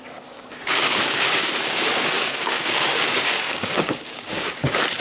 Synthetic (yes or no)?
yes